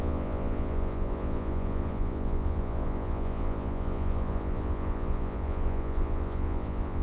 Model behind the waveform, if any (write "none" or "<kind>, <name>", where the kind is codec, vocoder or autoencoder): vocoder, Vocos